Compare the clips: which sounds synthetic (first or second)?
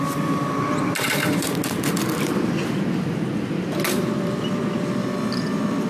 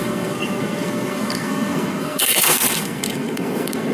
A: second